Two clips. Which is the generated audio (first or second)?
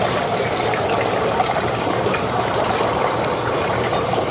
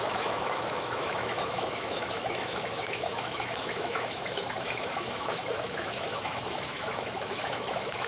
second